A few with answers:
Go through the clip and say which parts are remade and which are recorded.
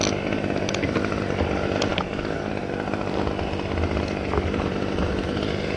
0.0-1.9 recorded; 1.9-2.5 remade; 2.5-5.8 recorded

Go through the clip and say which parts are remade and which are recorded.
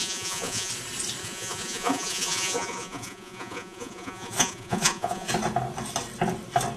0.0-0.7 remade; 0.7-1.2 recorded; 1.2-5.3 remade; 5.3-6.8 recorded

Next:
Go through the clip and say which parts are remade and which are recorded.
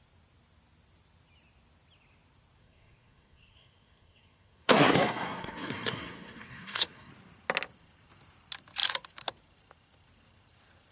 0.0-2.6 recorded; 2.6-7.1 remade; 7.1-10.9 recorded